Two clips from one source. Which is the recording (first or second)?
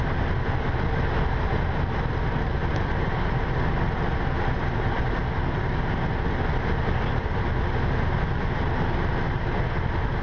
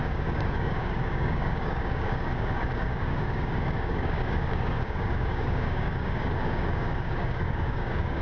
first